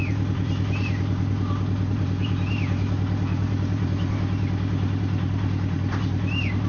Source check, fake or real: fake